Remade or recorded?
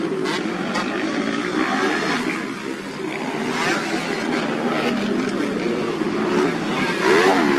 recorded